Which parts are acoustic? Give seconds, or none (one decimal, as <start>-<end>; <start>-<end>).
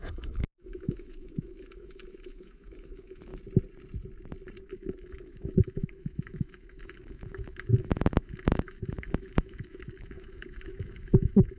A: 3.3-4.6